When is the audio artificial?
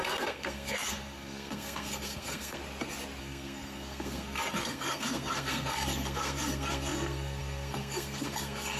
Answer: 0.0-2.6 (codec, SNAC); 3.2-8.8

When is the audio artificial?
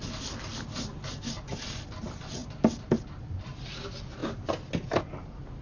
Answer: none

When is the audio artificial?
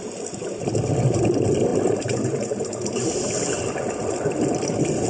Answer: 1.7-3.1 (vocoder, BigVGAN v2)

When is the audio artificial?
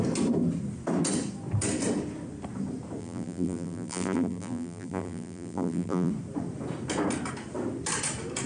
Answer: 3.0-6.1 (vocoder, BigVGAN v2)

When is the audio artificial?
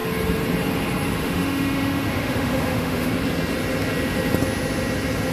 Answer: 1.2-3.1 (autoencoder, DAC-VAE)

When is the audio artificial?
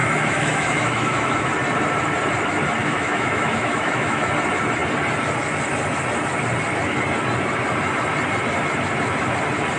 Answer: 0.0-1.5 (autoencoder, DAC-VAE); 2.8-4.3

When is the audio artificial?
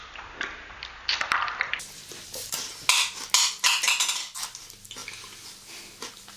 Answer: 0.0-2.7 (vocoder, BigVGAN v2)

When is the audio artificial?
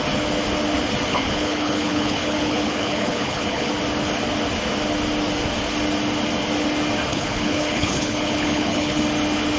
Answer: 1.1-3.7 (codec, HILCodec); 7.1-9.0